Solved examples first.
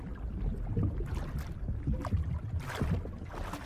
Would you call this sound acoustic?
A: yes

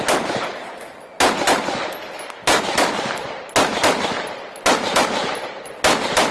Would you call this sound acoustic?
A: yes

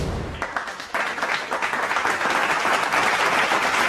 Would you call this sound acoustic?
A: yes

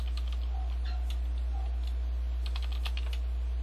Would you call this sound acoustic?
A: yes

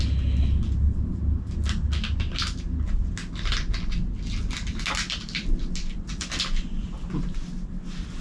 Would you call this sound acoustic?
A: yes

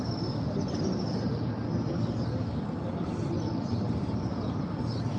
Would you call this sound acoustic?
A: yes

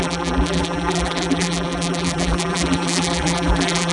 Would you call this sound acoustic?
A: no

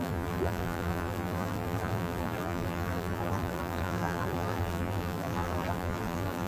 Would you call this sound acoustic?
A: no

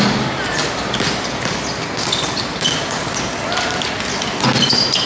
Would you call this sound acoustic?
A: yes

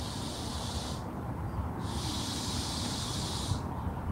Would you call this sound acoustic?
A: no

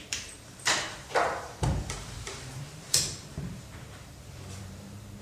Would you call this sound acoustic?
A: no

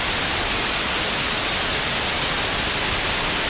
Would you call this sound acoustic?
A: yes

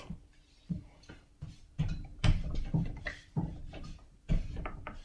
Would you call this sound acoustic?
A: no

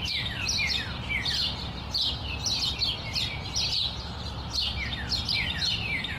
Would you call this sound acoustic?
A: yes